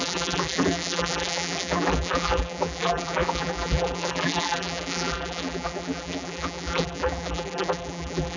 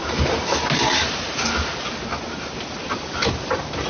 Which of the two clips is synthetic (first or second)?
first